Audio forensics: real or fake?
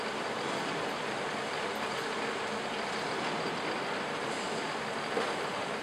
real